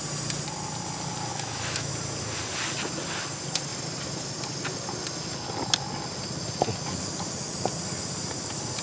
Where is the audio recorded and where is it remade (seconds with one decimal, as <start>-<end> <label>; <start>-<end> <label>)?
0.0-1.3 recorded; 1.3-1.9 remade; 1.9-8.8 recorded

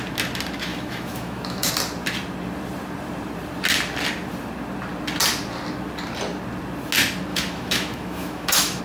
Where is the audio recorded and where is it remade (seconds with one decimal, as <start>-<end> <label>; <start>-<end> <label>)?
0.0-0.7 recorded; 0.7-1.7 remade; 1.7-7.3 recorded; 7.3-8.8 remade

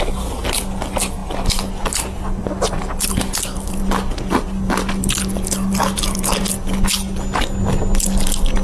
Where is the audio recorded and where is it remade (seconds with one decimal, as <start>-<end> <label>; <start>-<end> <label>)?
0.0-8.6 recorded

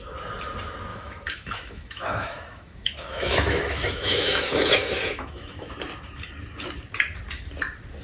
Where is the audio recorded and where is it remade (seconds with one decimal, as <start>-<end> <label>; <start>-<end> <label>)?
0.0-0.9 recorded; 0.9-5.7 remade; 5.7-8.0 recorded

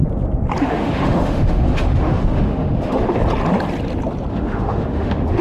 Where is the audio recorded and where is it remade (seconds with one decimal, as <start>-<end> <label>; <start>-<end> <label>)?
0.0-0.6 recorded; 0.6-3.2 remade; 3.2-4.3 recorded; 4.3-5.4 remade

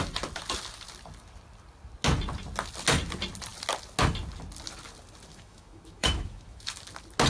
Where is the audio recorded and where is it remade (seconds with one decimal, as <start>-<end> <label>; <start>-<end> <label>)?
0.0-5.3 recorded; 5.3-6.8 remade; 6.8-7.3 recorded